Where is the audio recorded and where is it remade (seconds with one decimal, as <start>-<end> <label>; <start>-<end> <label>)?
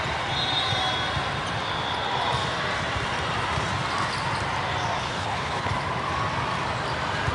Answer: 0.0-5.0 recorded; 5.0-5.7 remade; 5.7-7.3 recorded